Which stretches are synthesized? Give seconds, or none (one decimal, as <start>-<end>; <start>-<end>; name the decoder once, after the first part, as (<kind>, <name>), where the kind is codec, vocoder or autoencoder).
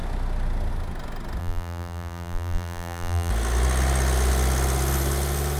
1.4-3.3 (vocoder, BigVGAN v2)